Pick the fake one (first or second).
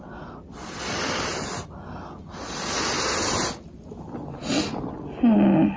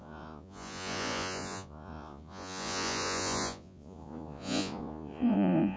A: second